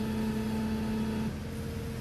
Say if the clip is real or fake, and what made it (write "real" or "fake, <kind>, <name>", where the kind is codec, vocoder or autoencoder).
real